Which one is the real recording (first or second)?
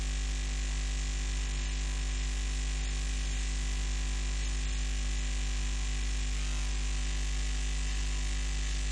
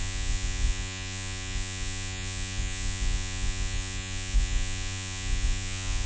first